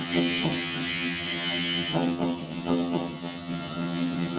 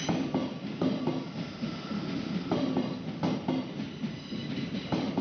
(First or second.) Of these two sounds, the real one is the second